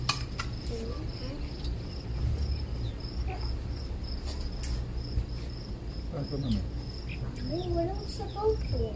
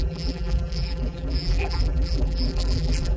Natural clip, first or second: first